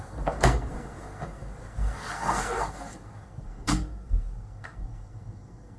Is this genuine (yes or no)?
no